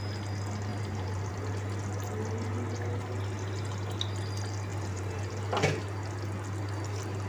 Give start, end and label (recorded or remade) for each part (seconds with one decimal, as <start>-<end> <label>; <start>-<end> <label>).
0.0-0.7 recorded; 0.7-1.3 remade; 1.3-4.7 recorded; 4.7-5.3 remade; 5.3-7.3 recorded